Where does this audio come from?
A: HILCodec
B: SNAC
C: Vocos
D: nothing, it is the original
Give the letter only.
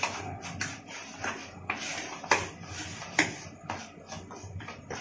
D